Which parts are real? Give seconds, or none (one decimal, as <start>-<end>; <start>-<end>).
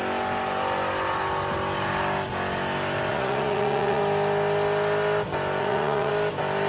0.0-3.1; 4.0-5.6; 6.1-6.7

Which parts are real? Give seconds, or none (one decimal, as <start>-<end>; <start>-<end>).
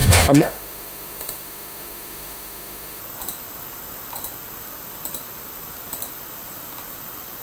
3.0-7.4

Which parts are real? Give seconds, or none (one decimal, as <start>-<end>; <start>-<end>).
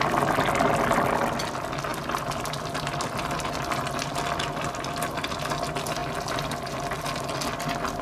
0.0-8.0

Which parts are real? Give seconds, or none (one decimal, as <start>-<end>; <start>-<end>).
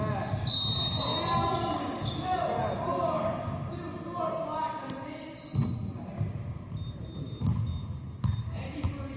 0.0-9.2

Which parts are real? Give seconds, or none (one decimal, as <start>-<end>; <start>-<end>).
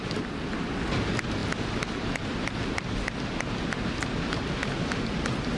0.0-5.6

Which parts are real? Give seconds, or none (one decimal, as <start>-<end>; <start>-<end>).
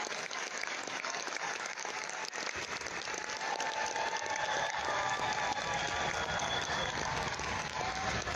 2.2-4.5; 5.3-6.4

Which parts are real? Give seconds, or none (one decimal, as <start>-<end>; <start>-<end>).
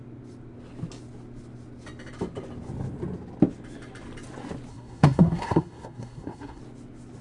0.0-4.7; 6.6-7.2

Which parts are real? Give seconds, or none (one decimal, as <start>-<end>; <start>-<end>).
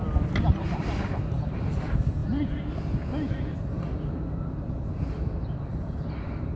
0.0-6.6